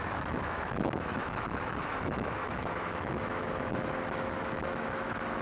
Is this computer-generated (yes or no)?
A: yes